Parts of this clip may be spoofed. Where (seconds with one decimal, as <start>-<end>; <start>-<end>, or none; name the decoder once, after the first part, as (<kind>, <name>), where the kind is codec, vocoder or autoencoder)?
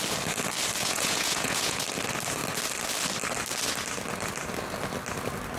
0.8-1.8 (vocoder, Vocos)